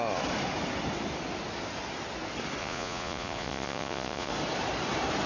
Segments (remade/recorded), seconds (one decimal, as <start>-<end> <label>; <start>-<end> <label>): 0.0-2.6 recorded; 2.6-4.3 remade; 4.3-5.3 recorded